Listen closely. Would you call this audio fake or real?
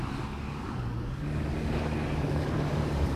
fake